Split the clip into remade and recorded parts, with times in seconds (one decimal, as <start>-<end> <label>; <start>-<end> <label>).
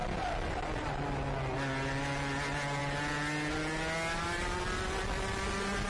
0.0-5.9 recorded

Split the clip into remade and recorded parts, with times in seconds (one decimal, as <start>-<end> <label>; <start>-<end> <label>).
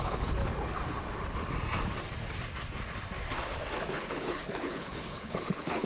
0.0-0.4 remade; 0.4-3.9 recorded; 3.9-5.9 remade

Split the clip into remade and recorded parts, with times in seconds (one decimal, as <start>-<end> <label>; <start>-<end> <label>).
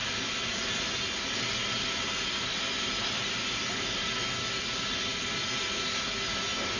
0.0-6.8 recorded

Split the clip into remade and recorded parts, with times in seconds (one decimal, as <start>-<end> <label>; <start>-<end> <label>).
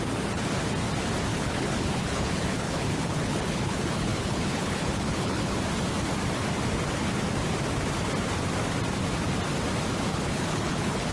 0.0-1.3 recorded; 1.3-5.5 remade; 5.5-10.1 recorded; 10.1-11.1 remade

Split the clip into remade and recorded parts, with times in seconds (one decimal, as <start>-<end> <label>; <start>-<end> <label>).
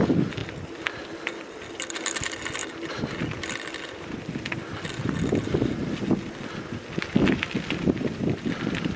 0.0-9.0 recorded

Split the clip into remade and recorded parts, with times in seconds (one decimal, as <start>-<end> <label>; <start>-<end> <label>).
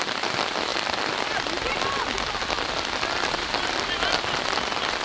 0.0-5.0 recorded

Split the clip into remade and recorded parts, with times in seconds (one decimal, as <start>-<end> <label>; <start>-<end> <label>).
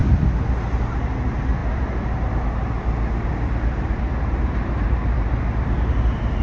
0.0-6.4 recorded